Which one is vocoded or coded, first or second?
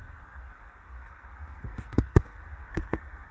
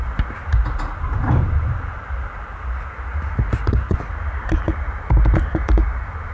first